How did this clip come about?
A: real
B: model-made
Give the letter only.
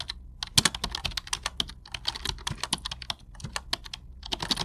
A